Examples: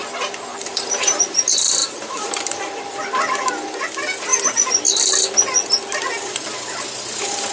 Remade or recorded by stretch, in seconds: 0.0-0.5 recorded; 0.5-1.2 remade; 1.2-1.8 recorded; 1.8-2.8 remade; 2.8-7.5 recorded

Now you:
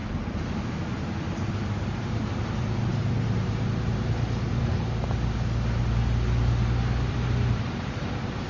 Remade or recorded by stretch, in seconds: 0.0-2.9 remade; 2.9-5.8 recorded; 5.8-8.5 remade

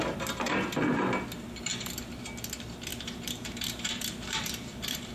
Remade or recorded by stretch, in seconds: 0.0-1.7 recorded; 1.7-2.2 remade; 2.2-2.9 recorded; 2.9-5.1 remade

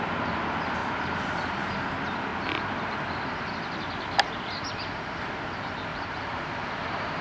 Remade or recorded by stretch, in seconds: 0.0-0.8 recorded; 0.8-1.7 remade; 1.7-2.3 recorded; 2.3-3.5 remade; 3.5-5.9 recorded; 5.9-7.2 remade

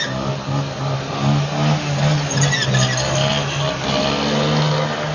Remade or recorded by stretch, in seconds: 0.0-2.6 recorded; 2.6-3.3 remade; 3.3-5.1 recorded